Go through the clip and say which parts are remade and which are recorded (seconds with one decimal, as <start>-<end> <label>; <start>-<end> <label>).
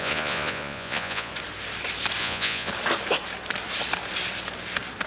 0.0-1.3 remade; 1.3-2.2 recorded; 2.2-2.7 remade; 2.7-5.1 recorded